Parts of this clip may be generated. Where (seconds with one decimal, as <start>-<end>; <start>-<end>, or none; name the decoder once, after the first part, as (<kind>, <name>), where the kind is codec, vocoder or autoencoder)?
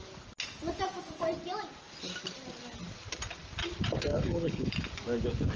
4.1-4.7 (codec, HILCodec)